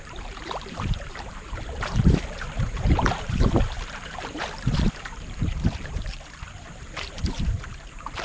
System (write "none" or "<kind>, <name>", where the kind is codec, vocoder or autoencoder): vocoder, BigVGAN v2